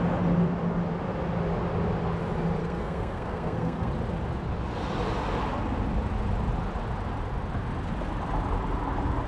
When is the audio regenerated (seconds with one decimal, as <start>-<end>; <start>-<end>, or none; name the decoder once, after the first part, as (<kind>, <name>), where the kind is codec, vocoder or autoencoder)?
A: 2.6-3.9 (codec, SNAC)